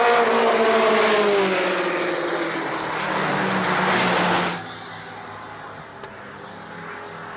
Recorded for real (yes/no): yes